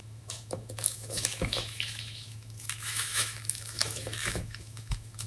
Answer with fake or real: fake